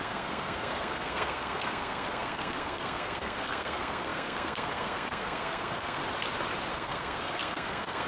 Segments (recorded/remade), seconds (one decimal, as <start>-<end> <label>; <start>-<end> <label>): 0.0-6.0 remade; 6.0-6.7 recorded; 6.7-8.1 remade